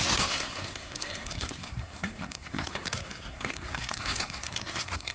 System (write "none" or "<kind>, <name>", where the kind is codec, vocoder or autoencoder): codec, SNAC